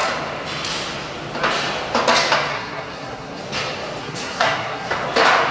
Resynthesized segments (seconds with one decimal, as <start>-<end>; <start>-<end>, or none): 2.5-3.4; 4.0-4.9

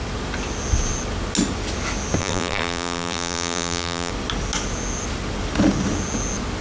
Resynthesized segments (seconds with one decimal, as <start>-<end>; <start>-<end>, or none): 2.2-4.1

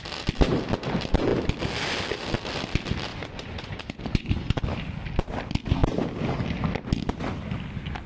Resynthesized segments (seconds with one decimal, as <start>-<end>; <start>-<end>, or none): 3.1-4.6